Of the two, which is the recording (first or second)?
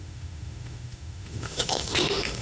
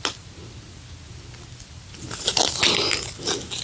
second